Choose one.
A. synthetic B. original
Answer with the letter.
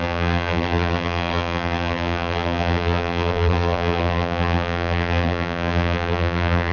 A